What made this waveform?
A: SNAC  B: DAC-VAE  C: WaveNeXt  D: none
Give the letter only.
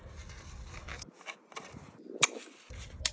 D